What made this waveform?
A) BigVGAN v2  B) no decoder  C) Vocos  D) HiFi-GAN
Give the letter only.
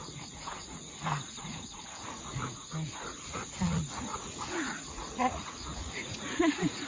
C